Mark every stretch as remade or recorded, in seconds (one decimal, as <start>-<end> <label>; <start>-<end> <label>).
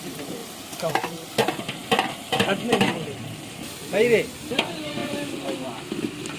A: 0.0-0.4 remade; 0.4-0.9 recorded; 0.9-5.0 remade; 5.0-5.9 recorded; 5.9-6.4 remade